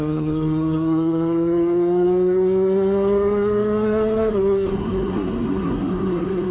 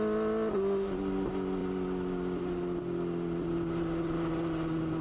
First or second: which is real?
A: second